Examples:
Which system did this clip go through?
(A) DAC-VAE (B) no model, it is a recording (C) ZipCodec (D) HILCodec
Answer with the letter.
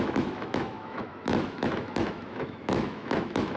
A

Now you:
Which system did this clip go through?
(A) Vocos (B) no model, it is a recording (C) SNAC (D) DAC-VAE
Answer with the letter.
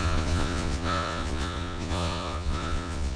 A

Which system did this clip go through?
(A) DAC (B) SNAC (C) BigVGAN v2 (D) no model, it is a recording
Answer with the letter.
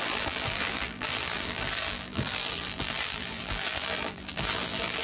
C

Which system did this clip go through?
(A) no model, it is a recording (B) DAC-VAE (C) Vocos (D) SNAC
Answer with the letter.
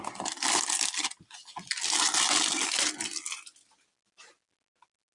A